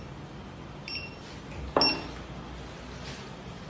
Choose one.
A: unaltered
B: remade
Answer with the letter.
A